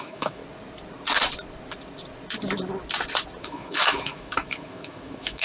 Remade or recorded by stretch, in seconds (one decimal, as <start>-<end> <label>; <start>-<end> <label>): 0.0-0.4 remade; 0.4-3.4 recorded; 3.4-5.4 remade